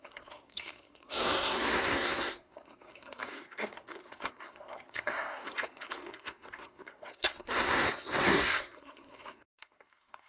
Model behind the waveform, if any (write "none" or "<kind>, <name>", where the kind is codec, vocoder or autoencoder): codec, SNAC